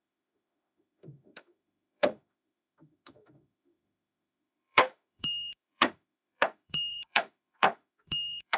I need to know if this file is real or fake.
fake